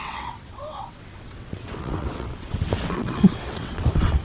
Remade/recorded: remade